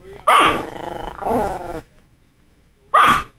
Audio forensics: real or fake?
fake